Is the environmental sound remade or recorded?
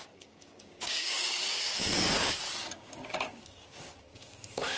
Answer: remade